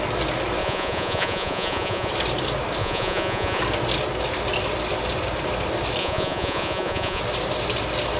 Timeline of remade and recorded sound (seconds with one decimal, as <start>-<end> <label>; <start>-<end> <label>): 0.0-0.6 recorded; 0.6-2.1 remade; 2.1-2.8 recorded; 2.8-3.6 remade; 3.6-6.0 recorded; 6.0-7.2 remade; 7.2-8.2 recorded